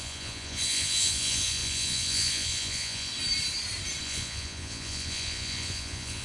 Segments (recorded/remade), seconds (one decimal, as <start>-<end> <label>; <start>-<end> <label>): 0.0-3.1 remade; 3.1-4.0 recorded; 4.0-6.2 remade